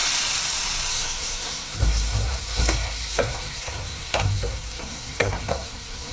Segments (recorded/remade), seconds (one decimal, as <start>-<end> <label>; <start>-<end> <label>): 0.0-0.9 recorded; 0.9-6.1 remade